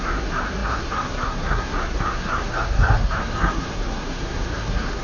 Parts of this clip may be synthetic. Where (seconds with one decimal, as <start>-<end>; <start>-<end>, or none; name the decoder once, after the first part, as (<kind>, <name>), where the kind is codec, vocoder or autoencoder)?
0.0-5.0 (codec, SNAC)